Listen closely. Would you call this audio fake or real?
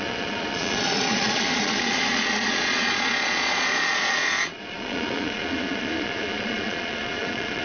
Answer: fake